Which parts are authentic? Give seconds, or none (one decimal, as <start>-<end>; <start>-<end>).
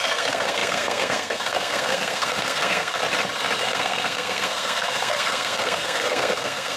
3.0-3.6